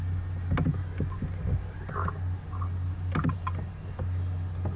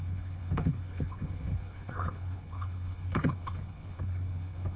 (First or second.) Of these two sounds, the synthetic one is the second